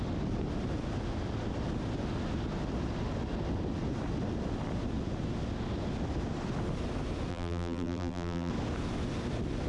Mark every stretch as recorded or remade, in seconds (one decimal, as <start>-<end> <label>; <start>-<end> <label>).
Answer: 0.0-7.3 recorded; 7.3-8.5 remade; 8.5-9.7 recorded